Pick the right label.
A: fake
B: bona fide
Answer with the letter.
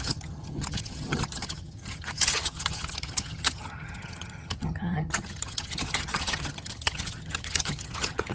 A